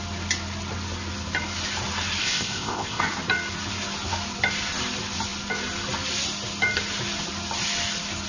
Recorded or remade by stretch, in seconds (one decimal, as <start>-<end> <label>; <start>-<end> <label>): 0.0-2.2 recorded; 2.2-3.0 remade; 3.0-8.3 recorded